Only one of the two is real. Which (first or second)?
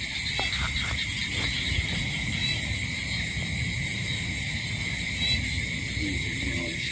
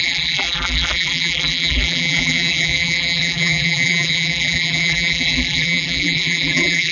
first